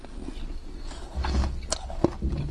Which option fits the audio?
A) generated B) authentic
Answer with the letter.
B